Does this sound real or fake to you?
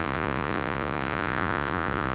fake